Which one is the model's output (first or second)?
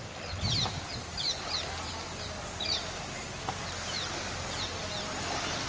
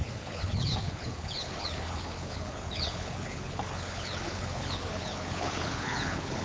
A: second